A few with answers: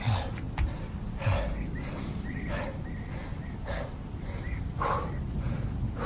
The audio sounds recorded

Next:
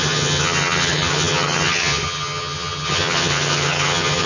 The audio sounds remade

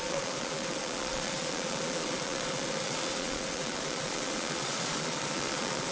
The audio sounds remade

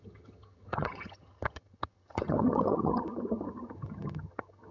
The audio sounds remade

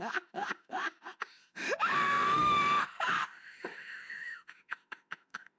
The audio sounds remade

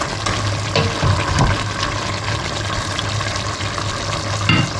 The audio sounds recorded